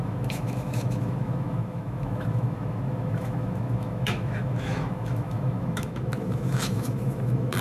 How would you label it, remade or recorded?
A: remade